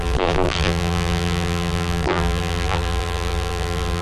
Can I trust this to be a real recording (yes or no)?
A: no